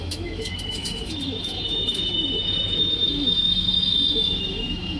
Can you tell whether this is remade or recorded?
remade